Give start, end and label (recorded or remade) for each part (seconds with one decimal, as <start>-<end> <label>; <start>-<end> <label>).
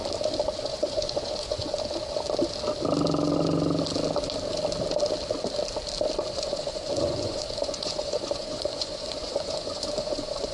0.0-0.6 recorded; 0.6-1.7 remade; 1.7-6.3 recorded; 6.3-10.5 remade